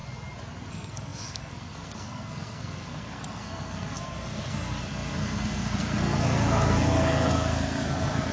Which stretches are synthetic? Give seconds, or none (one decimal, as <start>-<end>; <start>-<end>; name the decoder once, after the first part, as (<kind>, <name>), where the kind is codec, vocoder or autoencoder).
0.7-8.3 (codec, SNAC)